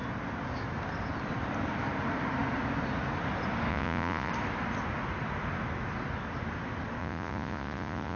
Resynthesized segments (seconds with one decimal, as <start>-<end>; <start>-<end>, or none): 3.7-4.3; 7.0-8.2